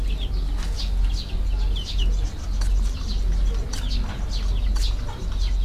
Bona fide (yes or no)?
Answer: yes